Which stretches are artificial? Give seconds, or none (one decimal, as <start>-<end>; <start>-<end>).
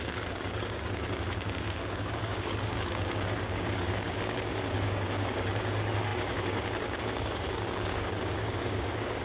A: 0.0-9.2